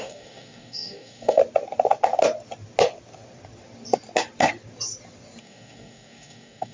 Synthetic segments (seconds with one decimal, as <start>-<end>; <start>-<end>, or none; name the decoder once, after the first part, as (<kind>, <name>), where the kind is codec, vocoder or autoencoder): 0.0-1.4 (codec, DAC); 5.4-6.7